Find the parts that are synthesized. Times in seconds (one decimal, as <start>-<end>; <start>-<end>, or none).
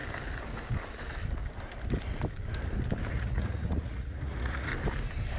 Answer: 3.1-4.7